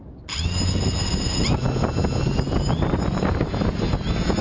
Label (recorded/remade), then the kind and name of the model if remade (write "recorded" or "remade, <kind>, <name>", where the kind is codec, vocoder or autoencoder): recorded